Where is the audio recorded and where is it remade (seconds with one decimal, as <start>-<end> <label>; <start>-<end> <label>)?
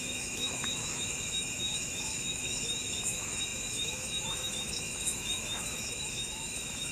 0.0-6.9 remade